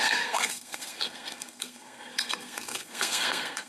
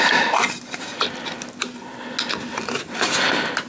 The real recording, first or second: second